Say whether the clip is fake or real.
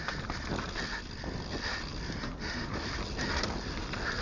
real